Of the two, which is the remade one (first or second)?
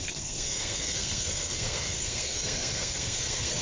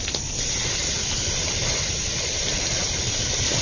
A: first